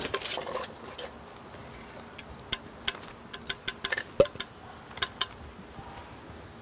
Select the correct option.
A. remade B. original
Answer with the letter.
B